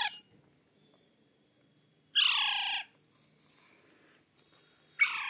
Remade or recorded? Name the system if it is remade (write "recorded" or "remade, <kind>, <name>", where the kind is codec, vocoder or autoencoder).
recorded